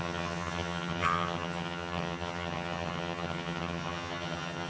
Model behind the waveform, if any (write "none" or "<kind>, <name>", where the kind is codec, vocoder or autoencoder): vocoder, HiFi-GAN